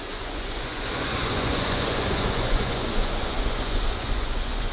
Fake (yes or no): yes